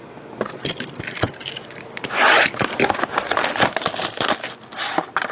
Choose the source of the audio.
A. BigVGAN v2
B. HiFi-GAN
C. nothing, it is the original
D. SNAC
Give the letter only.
C